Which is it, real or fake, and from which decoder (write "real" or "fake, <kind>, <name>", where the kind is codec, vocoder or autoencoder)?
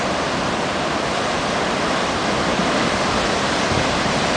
real